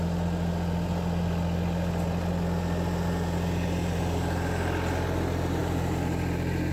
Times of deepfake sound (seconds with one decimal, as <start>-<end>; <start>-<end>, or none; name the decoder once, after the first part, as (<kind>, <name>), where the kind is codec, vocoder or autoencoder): 5.6-6.7 (vocoder, BigVGAN v2)